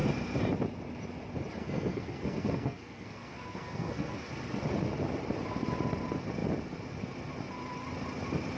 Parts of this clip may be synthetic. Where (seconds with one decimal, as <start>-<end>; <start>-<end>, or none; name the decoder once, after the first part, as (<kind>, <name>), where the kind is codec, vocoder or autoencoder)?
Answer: 1.6-4.3 (codec, SNAC)